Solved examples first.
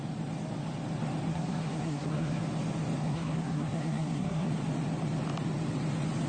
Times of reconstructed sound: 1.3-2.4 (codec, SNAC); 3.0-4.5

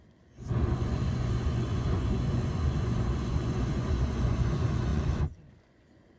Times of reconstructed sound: 0.0-6.2 (vocoder, Vocos)

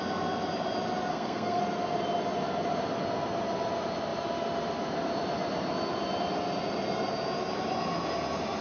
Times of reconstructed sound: 1.1-1.6 (codec, SNAC)

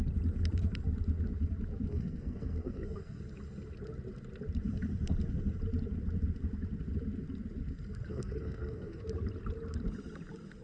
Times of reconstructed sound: 1.9-3.2 (codec, SNAC); 8.1-9.0